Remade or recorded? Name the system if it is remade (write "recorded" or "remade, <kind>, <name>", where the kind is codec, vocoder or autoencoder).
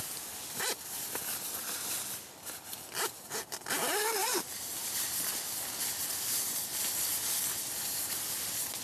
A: recorded